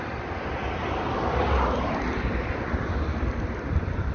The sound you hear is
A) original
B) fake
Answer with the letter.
A